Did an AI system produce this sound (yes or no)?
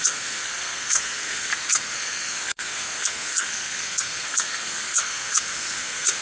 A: yes